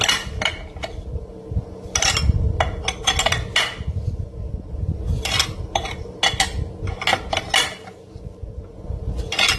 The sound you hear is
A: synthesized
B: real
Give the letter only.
B